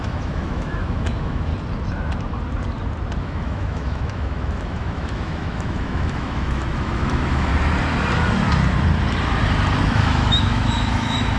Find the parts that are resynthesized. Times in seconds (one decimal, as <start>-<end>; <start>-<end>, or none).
0.0-1.5; 3.2-7.5; 9.8-11.4